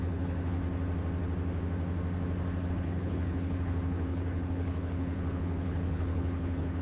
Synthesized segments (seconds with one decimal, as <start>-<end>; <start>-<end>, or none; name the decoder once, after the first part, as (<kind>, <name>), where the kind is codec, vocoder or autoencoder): 0.0-0.6 (codec, HILCodec); 2.7-6.8